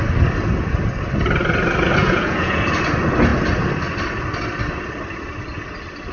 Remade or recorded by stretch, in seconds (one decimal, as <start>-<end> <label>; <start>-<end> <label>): 0.0-2.0 recorded; 2.0-2.6 remade; 2.6-6.1 recorded